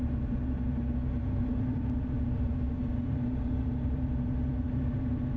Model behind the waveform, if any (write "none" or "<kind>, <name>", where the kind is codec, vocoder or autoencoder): vocoder, BigVGAN v2